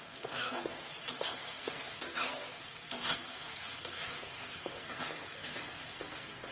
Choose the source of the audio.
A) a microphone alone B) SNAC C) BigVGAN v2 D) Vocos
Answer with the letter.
B